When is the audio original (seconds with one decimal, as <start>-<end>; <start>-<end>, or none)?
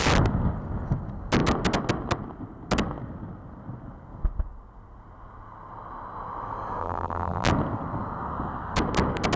0.0-6.8; 7.5-9.4